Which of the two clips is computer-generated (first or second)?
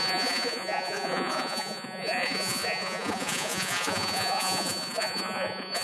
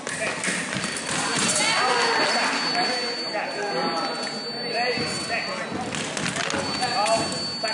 first